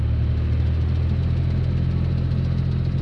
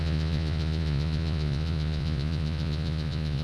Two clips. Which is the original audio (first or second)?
first